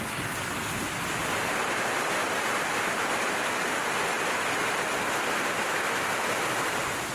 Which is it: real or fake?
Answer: real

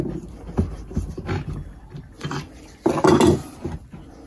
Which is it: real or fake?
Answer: real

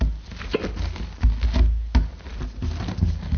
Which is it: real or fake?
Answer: real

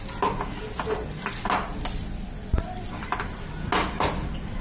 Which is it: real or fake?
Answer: real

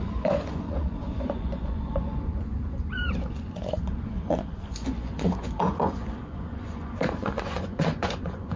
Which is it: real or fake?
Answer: fake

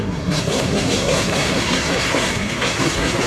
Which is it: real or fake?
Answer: fake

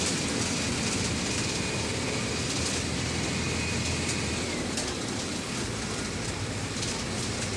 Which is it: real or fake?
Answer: fake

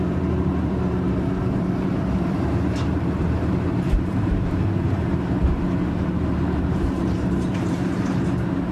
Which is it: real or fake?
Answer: fake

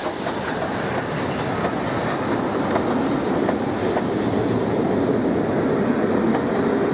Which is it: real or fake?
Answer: real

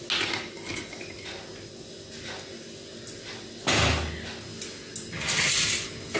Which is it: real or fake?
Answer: real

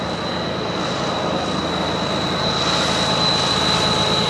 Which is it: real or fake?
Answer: real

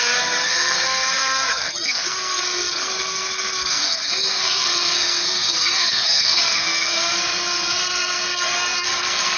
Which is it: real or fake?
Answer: fake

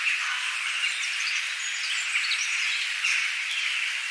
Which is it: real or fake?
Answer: real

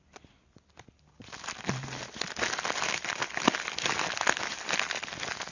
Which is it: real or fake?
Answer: real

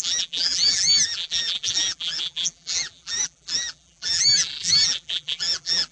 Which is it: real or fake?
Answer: fake